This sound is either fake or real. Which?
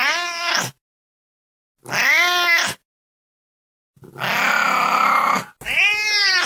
real